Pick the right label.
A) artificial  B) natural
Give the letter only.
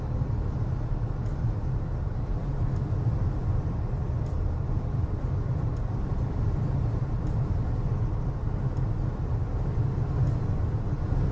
B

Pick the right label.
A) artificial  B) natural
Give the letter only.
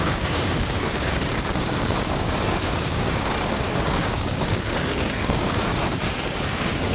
A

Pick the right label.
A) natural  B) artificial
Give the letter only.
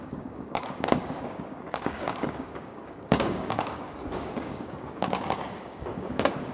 B